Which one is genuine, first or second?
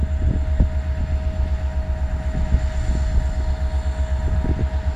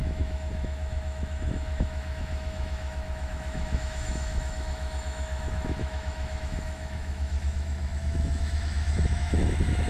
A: first